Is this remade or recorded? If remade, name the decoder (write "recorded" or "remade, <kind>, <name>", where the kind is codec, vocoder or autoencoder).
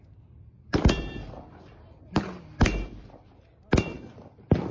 remade, vocoder, BigVGAN v2